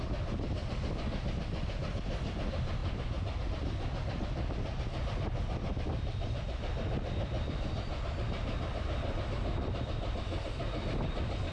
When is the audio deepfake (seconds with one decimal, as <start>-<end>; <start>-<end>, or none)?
2.8-3.4